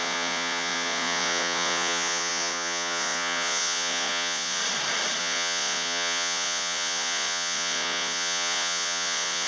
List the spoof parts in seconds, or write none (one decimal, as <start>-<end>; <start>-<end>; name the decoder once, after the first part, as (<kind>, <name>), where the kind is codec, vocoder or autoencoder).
0.0-4.6 (vocoder, Vocos); 5.2-9.5